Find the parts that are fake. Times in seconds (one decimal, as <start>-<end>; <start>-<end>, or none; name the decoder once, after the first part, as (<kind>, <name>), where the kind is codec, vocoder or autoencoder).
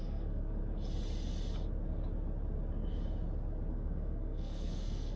0.0-0.6 (codec, SNAC); 3.7-5.2